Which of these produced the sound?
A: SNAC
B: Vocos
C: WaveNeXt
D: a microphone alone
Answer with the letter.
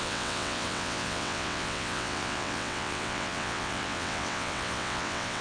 C